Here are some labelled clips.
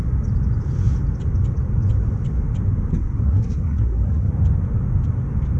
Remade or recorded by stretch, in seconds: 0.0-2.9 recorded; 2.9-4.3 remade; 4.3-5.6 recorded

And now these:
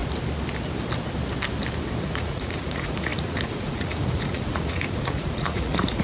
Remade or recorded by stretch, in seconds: 0.0-2.0 recorded; 2.0-6.0 remade

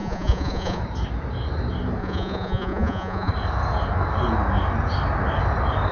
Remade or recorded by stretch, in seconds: 0.0-0.8 remade; 0.8-2.0 recorded; 2.0-3.3 remade; 3.3-5.9 recorded